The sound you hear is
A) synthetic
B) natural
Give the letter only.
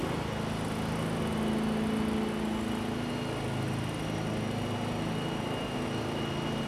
B